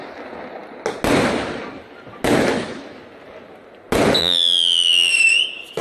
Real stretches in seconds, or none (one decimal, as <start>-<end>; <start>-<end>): 0.0-4.2; 5.1-5.8